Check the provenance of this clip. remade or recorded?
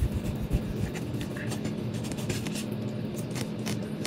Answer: recorded